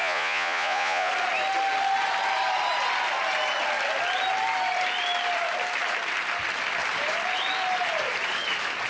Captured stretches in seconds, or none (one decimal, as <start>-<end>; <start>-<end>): 1.1-8.9